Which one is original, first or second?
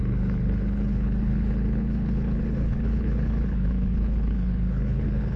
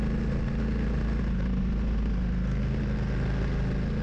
second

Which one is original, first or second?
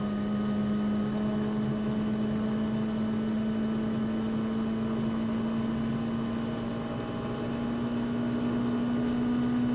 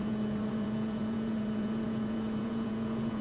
first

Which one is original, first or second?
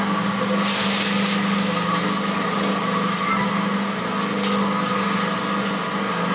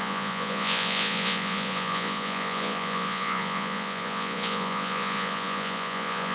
first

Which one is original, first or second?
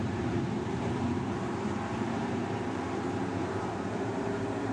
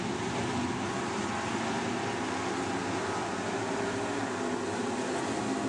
second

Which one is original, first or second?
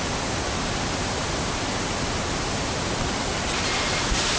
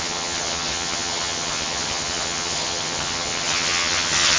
first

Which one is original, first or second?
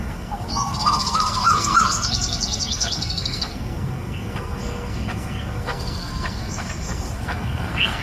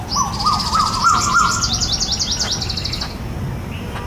second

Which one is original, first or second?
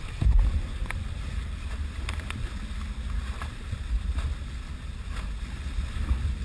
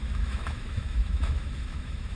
first